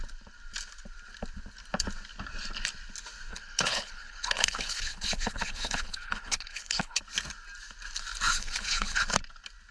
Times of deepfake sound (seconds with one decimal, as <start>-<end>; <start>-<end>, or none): 3.3-7.0; 8.3-9.0